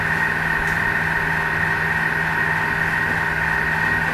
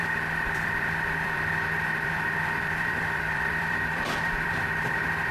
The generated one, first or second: second